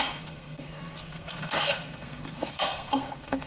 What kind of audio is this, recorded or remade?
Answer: remade